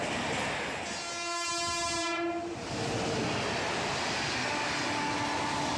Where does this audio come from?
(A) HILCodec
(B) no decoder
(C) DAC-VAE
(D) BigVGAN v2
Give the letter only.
B